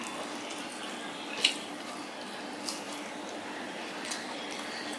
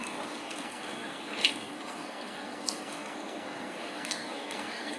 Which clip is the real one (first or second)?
first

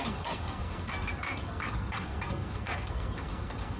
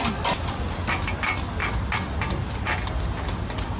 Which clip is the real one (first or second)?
second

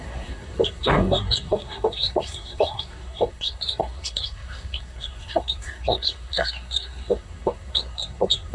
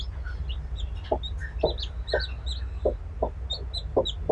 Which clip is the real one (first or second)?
second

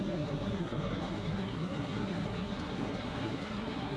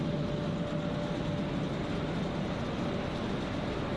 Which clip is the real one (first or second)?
second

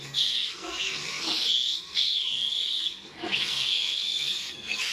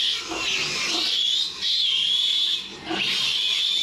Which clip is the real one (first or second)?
second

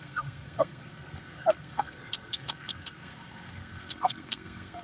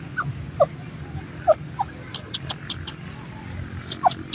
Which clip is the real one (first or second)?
second